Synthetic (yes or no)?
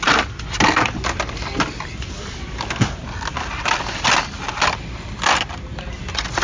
no